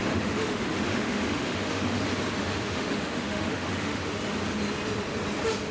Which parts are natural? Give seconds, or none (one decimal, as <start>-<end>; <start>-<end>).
2.0-2.4; 4.1-5.7